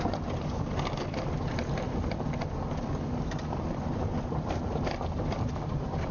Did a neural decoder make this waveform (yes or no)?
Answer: no